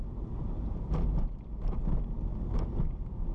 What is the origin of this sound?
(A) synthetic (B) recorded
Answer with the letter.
B